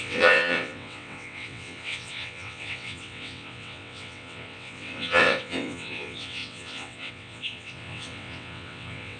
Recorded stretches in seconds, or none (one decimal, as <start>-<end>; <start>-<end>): none